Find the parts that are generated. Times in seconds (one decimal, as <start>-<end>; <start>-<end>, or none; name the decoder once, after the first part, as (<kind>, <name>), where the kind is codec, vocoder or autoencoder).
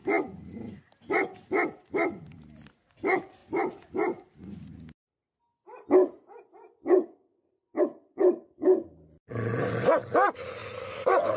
1.5-3.4 (vocoder, BigVGAN v2); 7.8-11.4